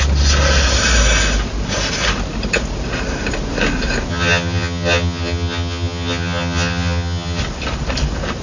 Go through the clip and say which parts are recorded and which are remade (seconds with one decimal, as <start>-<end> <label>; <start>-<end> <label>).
0.0-4.1 recorded; 4.1-7.4 remade; 7.4-8.4 recorded